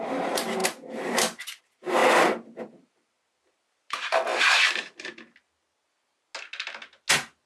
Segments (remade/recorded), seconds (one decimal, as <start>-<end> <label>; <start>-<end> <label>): 0.0-4.3 remade; 4.3-7.5 recorded